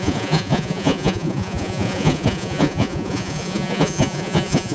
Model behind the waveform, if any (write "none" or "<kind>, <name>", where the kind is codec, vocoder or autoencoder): vocoder, Vocos